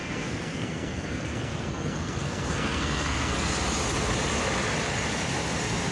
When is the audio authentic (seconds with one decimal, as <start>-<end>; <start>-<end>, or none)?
3.5-5.9

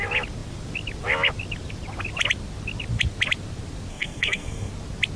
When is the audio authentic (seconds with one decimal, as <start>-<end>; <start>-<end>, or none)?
0.0-3.9; 4.7-5.2

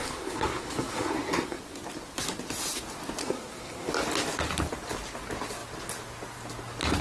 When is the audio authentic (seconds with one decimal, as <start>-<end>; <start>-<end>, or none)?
1.6-3.2; 3.9-7.0

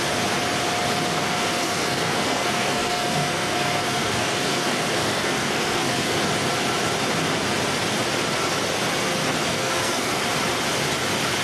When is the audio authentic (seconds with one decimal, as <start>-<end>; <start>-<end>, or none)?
0.0-1.3; 6.2-9.5; 10.2-11.4

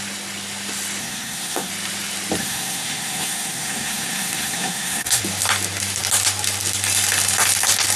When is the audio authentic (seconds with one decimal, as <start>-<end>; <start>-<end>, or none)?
0.0-1.0; 1.7-2.4; 5.2-8.0